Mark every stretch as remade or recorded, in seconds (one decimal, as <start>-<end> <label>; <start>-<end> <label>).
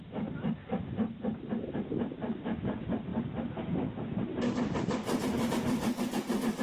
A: 0.0-6.6 recorded